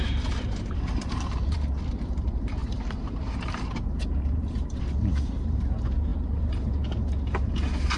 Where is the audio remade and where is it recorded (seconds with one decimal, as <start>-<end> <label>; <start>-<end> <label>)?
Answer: 0.0-8.0 remade